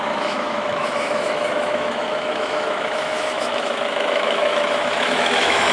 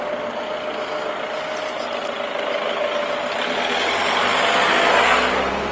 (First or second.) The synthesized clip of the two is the first